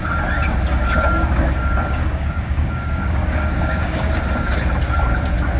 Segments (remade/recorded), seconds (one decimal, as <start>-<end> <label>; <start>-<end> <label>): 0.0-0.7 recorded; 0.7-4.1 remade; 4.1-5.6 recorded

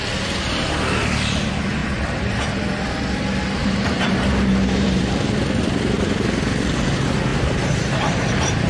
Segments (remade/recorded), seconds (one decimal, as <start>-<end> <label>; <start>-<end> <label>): 0.0-1.8 recorded; 1.8-2.6 remade; 2.6-3.6 recorded; 3.6-5.0 remade; 5.0-7.3 recorded; 7.3-8.7 remade

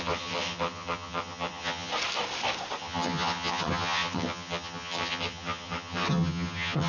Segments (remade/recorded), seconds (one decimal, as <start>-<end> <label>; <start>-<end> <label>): 0.0-1.9 remade; 1.9-2.8 recorded; 2.8-6.9 remade

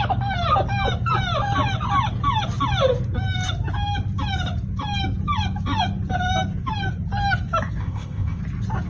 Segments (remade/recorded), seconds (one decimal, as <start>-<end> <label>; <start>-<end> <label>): 0.0-7.8 recorded; 7.8-8.4 remade; 8.4-8.9 recorded

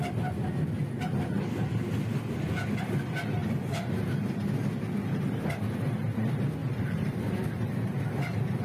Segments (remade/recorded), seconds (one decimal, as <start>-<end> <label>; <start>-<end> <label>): 0.0-6.6 recorded; 6.6-7.7 remade; 7.7-8.6 recorded